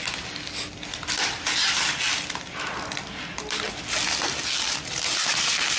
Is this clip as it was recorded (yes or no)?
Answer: yes